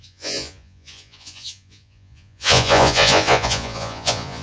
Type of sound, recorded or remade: remade